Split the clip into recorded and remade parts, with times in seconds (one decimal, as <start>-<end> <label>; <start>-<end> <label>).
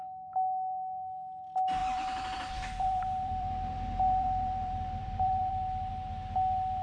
0.0-1.8 recorded; 1.8-5.9 remade; 5.9-6.8 recorded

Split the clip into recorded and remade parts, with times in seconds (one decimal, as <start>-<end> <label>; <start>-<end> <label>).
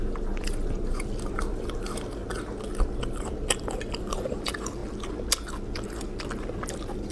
0.0-2.2 remade; 2.2-3.0 recorded; 3.0-4.8 remade; 4.8-6.4 recorded; 6.4-7.1 remade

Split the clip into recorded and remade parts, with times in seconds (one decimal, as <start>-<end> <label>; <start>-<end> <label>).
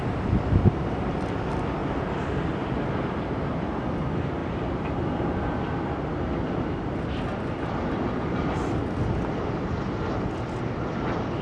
0.0-11.4 recorded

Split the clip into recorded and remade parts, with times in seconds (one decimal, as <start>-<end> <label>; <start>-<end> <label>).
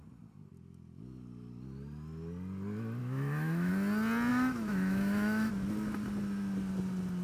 0.0-3.0 recorded; 3.0-3.7 remade; 3.7-4.3 recorded; 4.3-5.5 remade; 5.5-7.2 recorded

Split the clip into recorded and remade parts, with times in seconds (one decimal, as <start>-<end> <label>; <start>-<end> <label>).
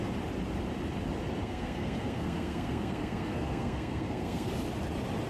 0.0-1.4 recorded; 1.4-4.5 remade; 4.5-5.3 recorded